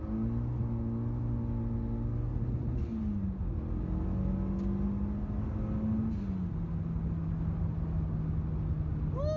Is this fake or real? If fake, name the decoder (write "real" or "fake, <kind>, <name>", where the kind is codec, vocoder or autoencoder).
real